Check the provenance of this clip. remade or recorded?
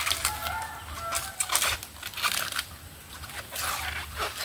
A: recorded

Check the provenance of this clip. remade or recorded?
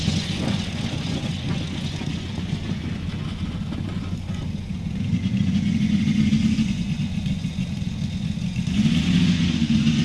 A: remade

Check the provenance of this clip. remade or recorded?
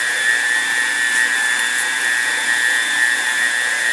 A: recorded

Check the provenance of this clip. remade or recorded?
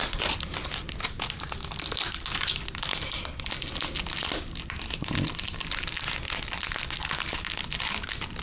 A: recorded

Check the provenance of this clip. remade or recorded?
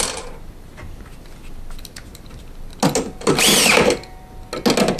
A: recorded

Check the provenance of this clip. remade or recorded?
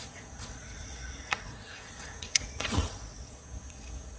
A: remade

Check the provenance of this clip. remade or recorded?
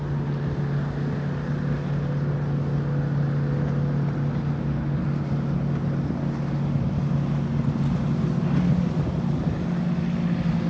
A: recorded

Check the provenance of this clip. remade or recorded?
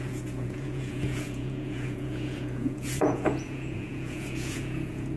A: remade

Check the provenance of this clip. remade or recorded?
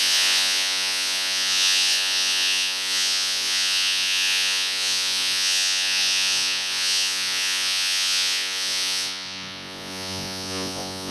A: remade